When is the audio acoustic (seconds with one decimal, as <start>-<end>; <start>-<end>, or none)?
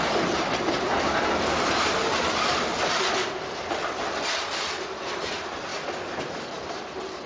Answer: 0.0-7.3